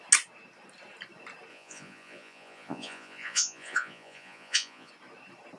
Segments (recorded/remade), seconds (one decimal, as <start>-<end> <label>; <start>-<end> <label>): 0.0-1.5 recorded; 1.5-4.9 remade; 4.9-5.6 recorded